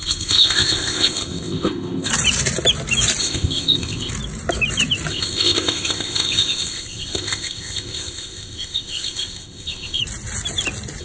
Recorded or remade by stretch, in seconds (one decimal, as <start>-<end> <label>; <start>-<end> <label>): 0.0-2.1 remade; 2.1-3.2 recorded; 3.2-4.1 remade; 4.1-5.1 recorded; 5.1-10.0 remade; 10.0-11.0 recorded